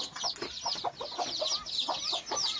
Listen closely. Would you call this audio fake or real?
real